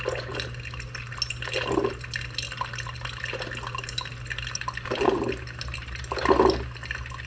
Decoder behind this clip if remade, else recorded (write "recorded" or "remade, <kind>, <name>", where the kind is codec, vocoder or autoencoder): recorded